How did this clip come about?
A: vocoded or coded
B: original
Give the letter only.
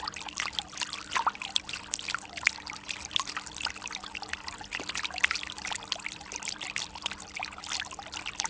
B